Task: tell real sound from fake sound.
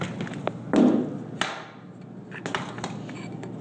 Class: real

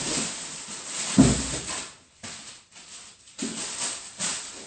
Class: real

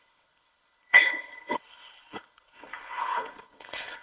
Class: fake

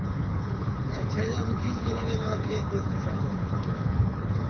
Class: fake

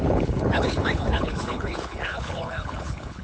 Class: fake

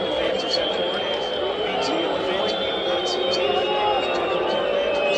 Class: real